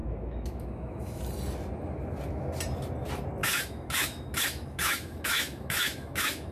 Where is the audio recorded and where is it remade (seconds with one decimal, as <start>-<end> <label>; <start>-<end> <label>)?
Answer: 0.0-1.2 remade; 1.2-3.4 recorded; 3.4-6.5 remade